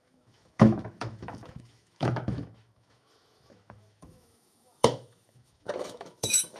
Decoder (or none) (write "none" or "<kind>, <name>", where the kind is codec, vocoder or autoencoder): autoencoder, DAC-VAE